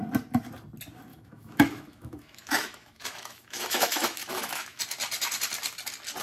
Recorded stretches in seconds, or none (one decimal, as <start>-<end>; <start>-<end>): 0.0-1.1; 4.8-6.2